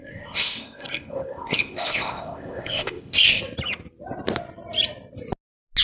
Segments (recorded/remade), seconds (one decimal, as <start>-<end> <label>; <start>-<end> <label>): 0.0-3.4 remade; 3.4-5.8 recorded